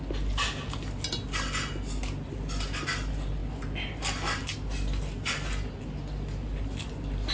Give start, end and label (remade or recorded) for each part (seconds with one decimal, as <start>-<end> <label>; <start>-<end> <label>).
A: 0.0-7.3 recorded

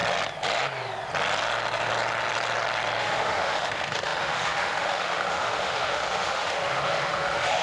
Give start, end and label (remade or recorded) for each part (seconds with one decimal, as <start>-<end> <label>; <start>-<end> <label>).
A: 0.0-3.0 recorded; 3.0-7.6 remade

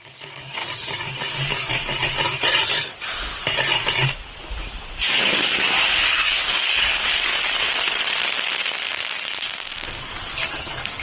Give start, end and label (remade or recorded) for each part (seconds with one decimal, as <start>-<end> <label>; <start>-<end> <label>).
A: 0.0-0.6 remade; 0.6-5.2 recorded; 5.2-7.3 remade; 7.3-8.9 recorded; 8.9-11.0 remade

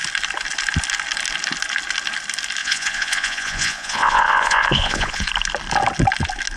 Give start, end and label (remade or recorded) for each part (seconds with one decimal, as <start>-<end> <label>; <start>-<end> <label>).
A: 0.0-2.6 recorded; 2.6-5.3 remade; 5.3-6.6 recorded